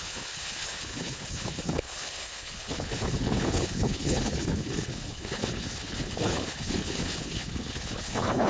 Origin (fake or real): fake